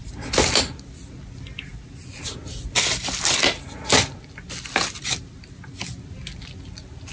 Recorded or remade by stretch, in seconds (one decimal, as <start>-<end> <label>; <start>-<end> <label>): 0.0-7.1 recorded